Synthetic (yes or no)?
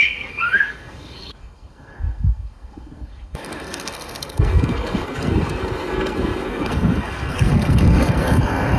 yes